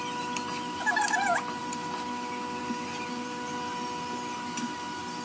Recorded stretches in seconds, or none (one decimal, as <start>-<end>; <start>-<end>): 0.0-5.2